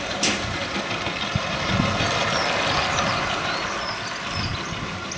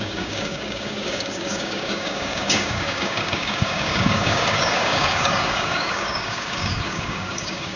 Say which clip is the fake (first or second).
second